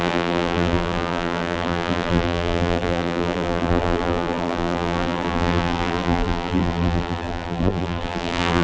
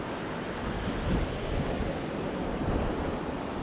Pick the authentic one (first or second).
second